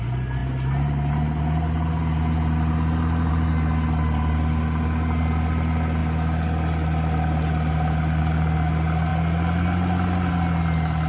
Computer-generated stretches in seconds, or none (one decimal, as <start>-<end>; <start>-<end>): none